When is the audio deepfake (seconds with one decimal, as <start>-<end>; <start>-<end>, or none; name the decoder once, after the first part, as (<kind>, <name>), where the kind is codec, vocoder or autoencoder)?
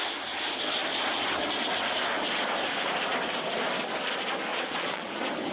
4.5-5.1 (vocoder, Vocos)